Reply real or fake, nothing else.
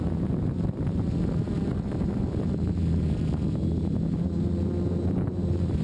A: real